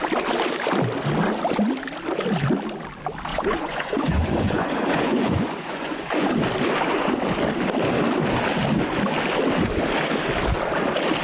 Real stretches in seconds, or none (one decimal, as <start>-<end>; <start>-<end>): 0.0-3.3; 6.3-11.2